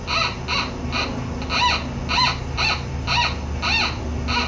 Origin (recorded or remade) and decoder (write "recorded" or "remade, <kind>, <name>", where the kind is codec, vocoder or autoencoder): recorded